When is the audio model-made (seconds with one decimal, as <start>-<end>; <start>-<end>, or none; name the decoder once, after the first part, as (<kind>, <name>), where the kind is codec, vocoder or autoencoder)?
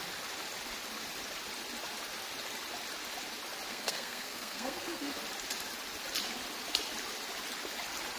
3.7-5.1 (codec, SNAC)